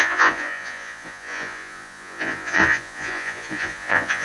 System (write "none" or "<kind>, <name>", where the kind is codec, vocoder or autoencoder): vocoder, Vocos